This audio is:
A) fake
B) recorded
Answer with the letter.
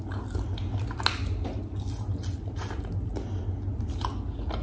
B